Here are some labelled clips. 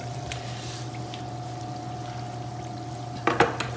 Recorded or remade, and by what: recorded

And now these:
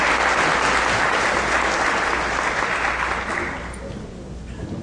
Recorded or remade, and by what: recorded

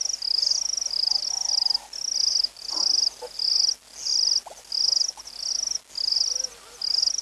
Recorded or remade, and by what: recorded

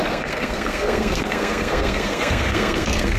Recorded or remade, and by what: remade, codec, SNAC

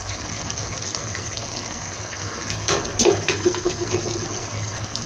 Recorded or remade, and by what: remade, codec, SNAC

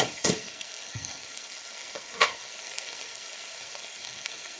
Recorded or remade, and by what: remade, codec, SNAC